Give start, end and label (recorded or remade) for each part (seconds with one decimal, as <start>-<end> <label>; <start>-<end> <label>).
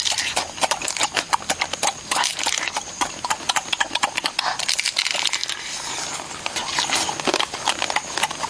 0.0-2.3 recorded; 2.3-3.0 remade; 3.0-8.5 recorded